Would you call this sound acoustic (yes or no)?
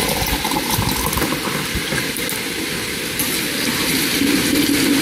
no